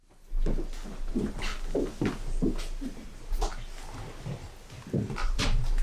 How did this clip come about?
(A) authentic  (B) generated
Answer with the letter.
A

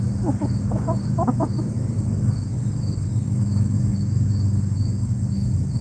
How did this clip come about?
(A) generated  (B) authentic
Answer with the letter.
A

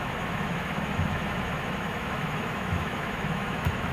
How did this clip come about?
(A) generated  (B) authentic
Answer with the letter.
A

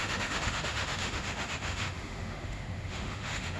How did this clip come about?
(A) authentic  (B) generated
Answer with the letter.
B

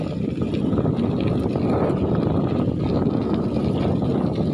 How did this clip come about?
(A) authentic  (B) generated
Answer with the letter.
A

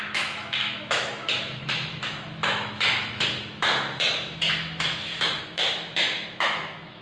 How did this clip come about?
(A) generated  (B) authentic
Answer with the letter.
A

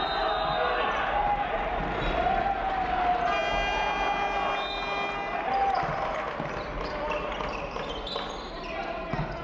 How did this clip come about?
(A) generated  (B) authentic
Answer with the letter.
B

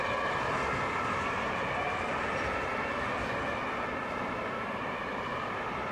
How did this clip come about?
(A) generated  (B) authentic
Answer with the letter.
B